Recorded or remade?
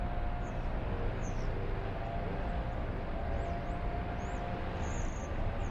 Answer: recorded